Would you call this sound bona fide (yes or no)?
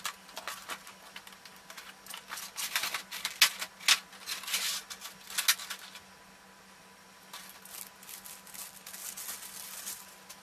yes